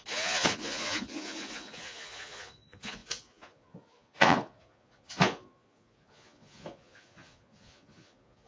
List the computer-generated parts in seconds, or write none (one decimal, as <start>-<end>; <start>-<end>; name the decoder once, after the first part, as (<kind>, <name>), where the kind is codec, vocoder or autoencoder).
0.0-8.5 (vocoder, Vocos)